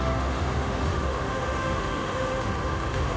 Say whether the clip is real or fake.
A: fake